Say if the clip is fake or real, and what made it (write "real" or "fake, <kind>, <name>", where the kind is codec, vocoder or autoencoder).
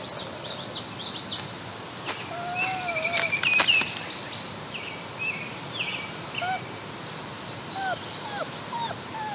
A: real